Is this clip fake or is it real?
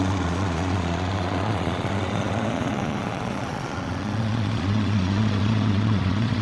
fake